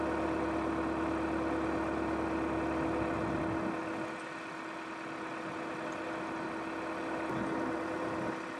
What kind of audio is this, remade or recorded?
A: recorded